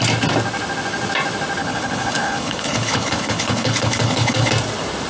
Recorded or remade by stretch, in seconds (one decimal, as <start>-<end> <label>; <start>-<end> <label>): 0.0-1.6 recorded; 1.6-4.5 remade; 4.5-5.1 recorded